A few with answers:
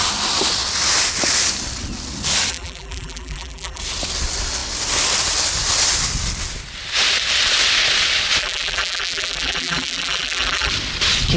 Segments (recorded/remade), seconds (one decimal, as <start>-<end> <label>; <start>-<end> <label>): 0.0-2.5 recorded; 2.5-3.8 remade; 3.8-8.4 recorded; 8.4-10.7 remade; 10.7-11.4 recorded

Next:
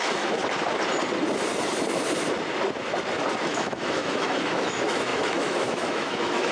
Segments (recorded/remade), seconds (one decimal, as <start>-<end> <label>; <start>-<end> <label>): 0.0-0.4 remade; 0.4-3.4 recorded; 3.4-6.5 remade

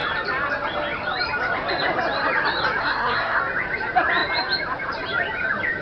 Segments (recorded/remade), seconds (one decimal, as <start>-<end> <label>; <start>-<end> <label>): 0.0-2.8 recorded; 2.8-3.4 remade; 3.4-5.8 recorded

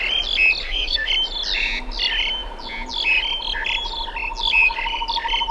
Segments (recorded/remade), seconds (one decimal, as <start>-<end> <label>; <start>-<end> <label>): 0.0-0.6 recorded; 0.6-1.1 remade; 1.1-5.5 recorded

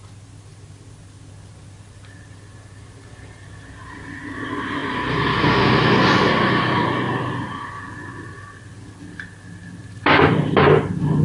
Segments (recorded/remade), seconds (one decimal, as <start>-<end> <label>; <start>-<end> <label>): 0.0-11.2 recorded